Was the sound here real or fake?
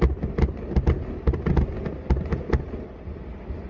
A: real